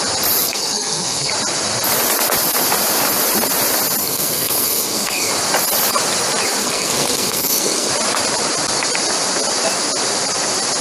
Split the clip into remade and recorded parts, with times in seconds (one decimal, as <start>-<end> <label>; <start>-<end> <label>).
0.0-0.4 recorded; 0.4-1.3 remade; 1.3-4.0 recorded; 4.0-5.3 remade; 5.3-6.6 recorded; 6.6-7.9 remade; 7.9-10.8 recorded